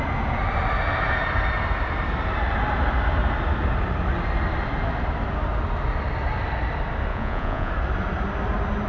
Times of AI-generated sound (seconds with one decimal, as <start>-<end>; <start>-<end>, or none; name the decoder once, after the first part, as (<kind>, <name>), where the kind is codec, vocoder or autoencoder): 7.1-7.7 (vocoder, Vocos)

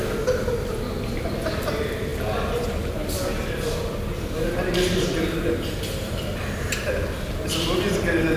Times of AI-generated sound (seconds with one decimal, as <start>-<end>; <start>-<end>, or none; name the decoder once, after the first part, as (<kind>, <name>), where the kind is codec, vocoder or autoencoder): none